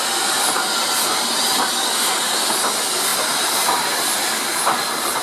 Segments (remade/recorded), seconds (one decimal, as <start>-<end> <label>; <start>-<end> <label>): 0.0-5.2 recorded